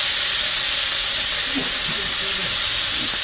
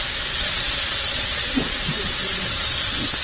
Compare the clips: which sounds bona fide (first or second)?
first